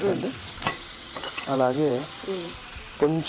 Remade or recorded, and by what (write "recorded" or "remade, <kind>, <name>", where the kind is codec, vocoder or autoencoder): remade, vocoder, WaveNeXt